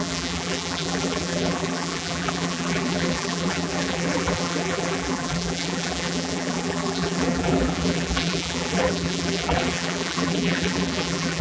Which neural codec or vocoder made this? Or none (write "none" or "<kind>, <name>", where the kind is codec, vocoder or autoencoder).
vocoder, BigVGAN v2